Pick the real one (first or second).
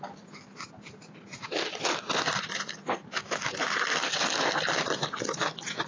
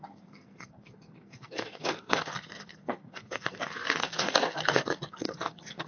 first